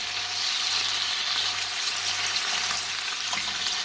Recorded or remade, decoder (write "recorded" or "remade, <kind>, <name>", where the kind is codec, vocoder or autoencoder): recorded